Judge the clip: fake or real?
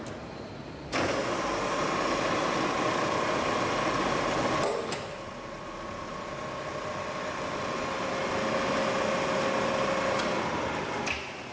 real